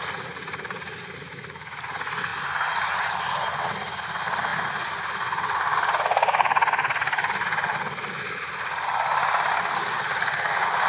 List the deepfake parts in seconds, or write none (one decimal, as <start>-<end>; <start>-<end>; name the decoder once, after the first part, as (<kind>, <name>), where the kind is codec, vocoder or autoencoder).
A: none